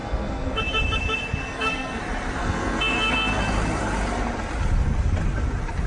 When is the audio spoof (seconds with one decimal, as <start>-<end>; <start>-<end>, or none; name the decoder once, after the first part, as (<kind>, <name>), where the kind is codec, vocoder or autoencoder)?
0.0-0.6 (codec, SNAC); 1.4-2.0; 2.4-3.4